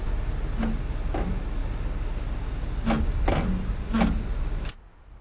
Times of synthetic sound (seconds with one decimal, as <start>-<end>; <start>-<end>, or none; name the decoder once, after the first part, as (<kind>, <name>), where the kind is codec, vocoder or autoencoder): none